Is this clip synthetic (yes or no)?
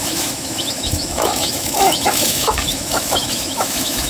yes